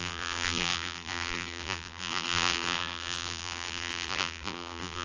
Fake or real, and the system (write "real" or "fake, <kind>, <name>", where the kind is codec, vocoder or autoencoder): fake, vocoder, BigVGAN v2